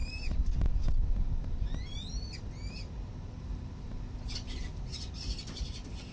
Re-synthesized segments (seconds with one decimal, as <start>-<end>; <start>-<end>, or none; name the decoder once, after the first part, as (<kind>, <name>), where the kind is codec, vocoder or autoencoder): none